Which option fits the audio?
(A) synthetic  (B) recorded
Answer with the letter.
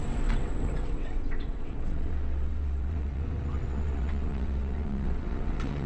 A